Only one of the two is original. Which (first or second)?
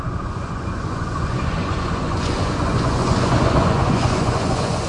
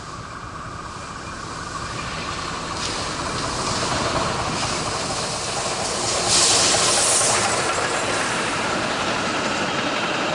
second